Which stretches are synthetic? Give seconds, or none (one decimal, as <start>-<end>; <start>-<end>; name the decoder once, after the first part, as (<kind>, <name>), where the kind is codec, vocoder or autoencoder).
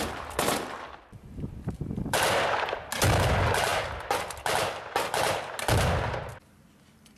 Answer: none